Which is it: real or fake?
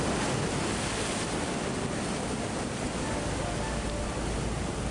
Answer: real